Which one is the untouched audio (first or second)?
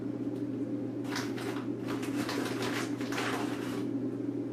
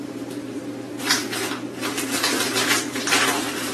first